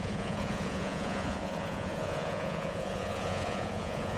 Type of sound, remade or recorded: remade